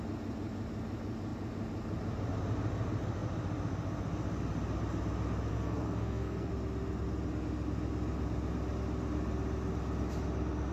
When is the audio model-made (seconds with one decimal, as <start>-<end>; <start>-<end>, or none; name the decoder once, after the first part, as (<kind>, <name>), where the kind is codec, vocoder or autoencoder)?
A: 5.5-6.5 (codec, SNAC)